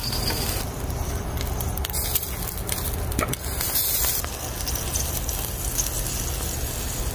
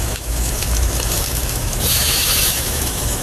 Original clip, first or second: first